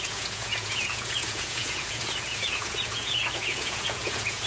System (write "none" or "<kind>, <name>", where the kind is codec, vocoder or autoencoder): vocoder, Vocos